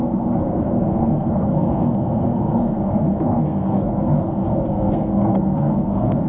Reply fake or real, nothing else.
fake